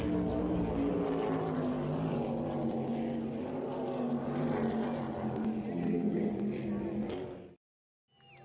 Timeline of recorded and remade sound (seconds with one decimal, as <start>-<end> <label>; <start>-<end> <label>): 0.0-5.7 recorded; 5.7-6.3 remade; 6.3-8.4 recorded